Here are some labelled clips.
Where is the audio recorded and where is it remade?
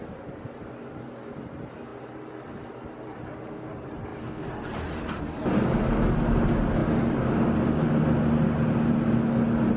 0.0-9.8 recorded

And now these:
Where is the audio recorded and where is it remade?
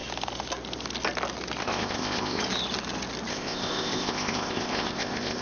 0.0-1.6 recorded; 1.6-2.4 remade; 2.4-3.3 recorded; 3.3-5.4 remade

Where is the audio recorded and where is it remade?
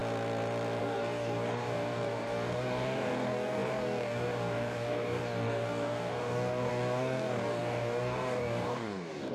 0.0-0.8 recorded; 0.8-9.3 remade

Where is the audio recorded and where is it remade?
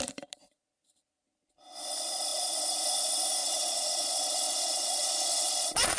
0.0-3.4 recorded; 3.4-6.0 remade